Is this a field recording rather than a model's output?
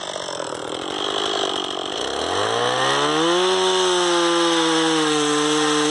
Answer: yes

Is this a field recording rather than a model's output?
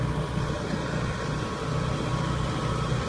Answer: yes